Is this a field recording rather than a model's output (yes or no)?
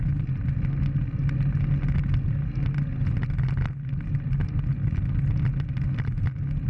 yes